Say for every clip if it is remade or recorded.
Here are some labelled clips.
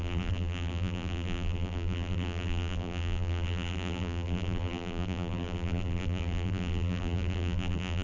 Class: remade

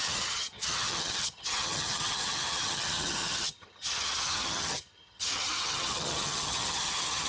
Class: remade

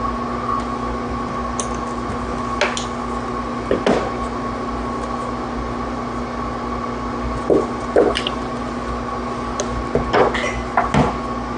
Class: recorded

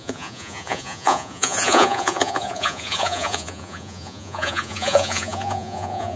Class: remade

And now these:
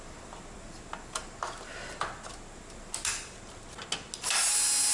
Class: recorded